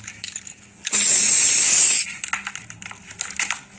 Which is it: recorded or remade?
recorded